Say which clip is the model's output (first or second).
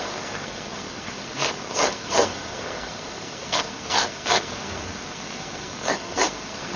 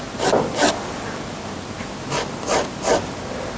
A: first